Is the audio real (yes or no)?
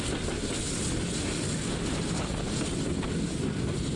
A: yes